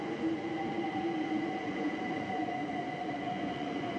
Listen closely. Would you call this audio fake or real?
fake